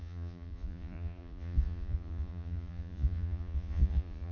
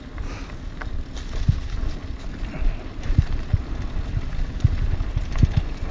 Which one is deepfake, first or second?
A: first